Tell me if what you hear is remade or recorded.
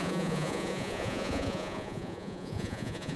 remade